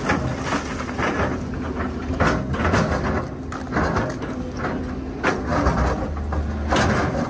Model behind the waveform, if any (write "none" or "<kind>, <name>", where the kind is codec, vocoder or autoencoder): none